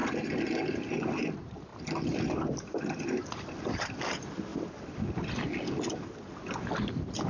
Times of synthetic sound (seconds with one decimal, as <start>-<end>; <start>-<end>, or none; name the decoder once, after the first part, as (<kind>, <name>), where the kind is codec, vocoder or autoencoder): 0.0-1.7 (vocoder, BigVGAN v2); 3.8-4.5; 6.5-7.3